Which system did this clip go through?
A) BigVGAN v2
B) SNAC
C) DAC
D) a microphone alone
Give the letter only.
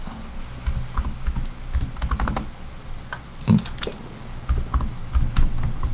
D